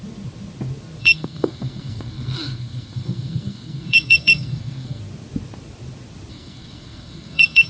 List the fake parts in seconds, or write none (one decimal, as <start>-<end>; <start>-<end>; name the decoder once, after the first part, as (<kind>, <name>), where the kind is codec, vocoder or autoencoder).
1.0-5.0 (codec, SNAC); 6.3-7.7